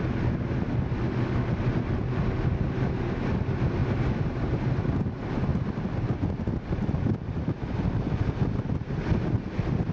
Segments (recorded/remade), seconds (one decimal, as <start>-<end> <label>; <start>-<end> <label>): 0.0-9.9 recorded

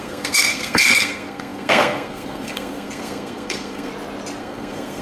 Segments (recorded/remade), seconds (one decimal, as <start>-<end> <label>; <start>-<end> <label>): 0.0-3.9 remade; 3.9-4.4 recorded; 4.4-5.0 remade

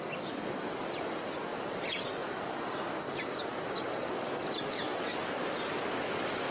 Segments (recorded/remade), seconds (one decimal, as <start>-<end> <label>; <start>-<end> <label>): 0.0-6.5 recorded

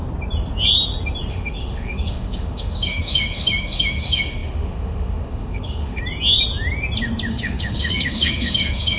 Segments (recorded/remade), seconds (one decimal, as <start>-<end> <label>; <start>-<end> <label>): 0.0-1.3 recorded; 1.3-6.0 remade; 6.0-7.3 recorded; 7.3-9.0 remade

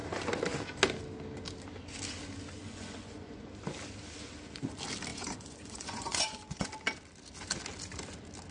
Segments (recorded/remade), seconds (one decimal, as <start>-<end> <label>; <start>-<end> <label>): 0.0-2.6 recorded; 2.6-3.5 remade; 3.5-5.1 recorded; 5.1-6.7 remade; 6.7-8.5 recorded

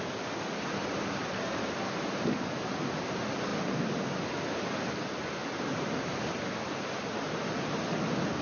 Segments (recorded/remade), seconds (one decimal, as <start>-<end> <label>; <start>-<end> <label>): 0.0-8.4 recorded

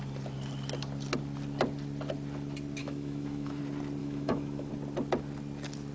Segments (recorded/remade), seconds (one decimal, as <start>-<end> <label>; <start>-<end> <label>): 0.0-2.8 recorded; 2.8-3.6 remade; 3.6-4.0 recorded; 4.0-4.7 remade; 4.7-5.9 recorded

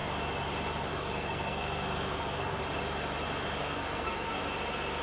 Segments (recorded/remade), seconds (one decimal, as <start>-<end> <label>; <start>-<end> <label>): 0.0-0.9 recorded; 0.9-2.6 remade; 2.6-3.6 recorded; 3.6-4.4 remade; 4.4-5.0 recorded